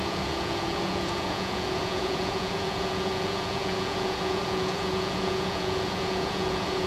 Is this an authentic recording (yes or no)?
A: no